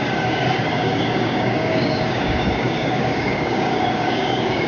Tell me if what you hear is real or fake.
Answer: fake